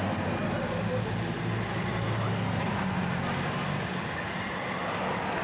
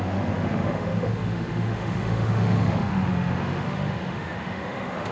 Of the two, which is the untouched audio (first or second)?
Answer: first